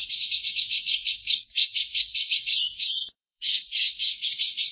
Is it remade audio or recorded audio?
remade